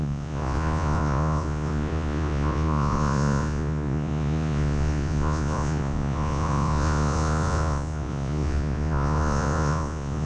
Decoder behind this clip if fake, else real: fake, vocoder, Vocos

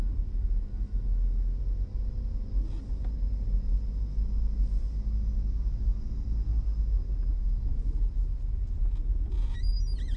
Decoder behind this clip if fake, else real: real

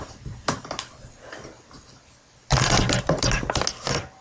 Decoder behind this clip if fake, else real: real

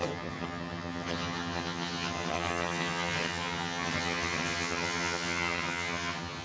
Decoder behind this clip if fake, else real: fake, vocoder, HiFi-GAN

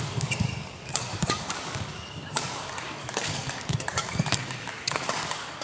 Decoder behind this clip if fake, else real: fake, codec, DAC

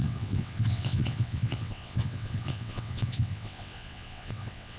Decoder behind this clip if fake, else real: fake, vocoder, WaveNeXt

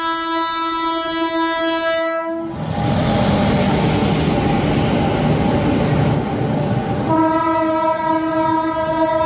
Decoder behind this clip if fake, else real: real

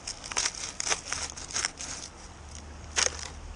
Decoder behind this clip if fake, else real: real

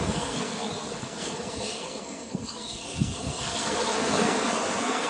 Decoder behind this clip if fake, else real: fake, codec, SNAC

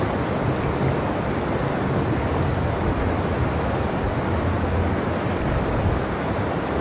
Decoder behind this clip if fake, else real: real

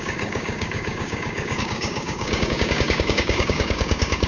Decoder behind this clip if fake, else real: fake, codec, DAC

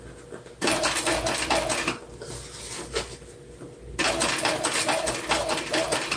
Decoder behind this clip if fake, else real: real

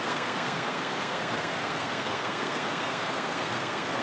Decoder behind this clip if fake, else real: fake, codec, SNAC